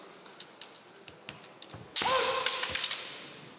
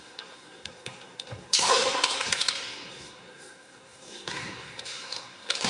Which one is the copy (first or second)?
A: second